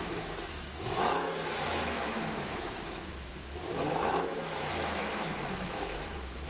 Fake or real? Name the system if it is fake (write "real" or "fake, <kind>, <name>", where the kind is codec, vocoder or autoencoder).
fake, autoencoder, DAC-VAE